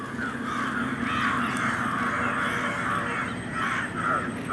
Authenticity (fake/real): real